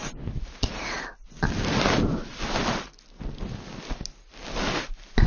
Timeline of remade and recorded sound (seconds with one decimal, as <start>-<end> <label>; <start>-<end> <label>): 0.0-5.3 recorded